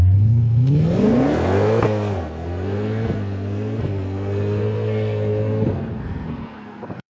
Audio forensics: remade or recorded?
remade